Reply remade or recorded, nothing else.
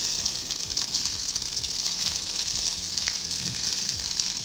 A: remade